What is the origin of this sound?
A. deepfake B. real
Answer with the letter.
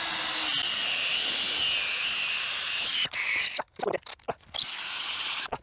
B